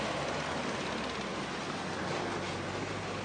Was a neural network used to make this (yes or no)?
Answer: no